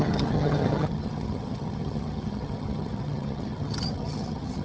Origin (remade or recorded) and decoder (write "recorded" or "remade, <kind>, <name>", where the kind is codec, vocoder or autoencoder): remade, vocoder, HiFi-GAN